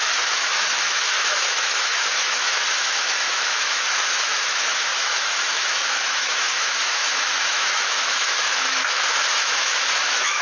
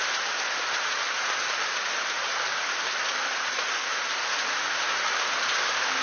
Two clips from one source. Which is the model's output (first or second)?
first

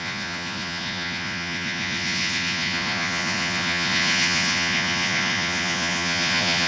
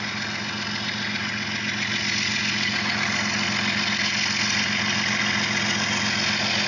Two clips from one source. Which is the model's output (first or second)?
first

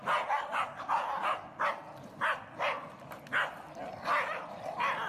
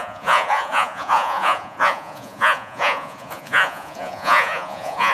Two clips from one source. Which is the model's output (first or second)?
second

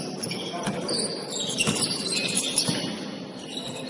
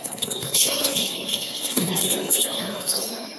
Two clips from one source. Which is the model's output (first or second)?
second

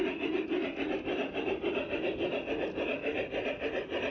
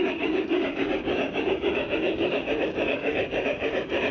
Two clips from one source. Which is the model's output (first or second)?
second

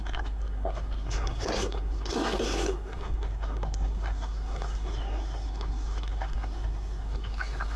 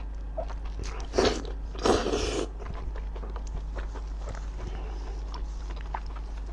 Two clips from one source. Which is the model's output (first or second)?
first